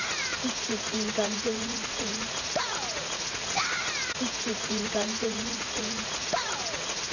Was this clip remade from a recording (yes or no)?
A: yes